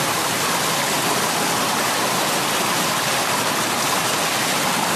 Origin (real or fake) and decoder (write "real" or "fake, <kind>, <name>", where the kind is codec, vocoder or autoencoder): real